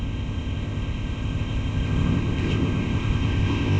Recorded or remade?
remade